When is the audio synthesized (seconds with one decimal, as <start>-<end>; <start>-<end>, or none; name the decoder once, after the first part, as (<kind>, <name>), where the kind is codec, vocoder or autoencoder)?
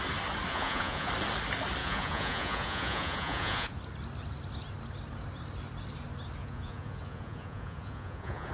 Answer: 0.5-1.1 (vocoder, Vocos); 1.8-3.8; 6.4-8.5